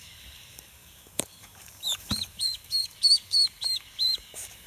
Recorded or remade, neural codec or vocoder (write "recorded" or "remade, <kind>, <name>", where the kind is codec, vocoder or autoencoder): remade, codec, DAC